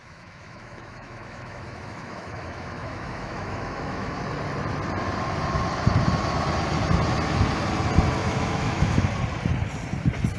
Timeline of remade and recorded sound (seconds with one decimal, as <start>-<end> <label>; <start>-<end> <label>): 0.0-4.2 remade; 4.2-8.2 recorded; 8.2-9.1 remade; 9.1-10.4 recorded